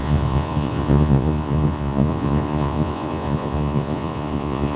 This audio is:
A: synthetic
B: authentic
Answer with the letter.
A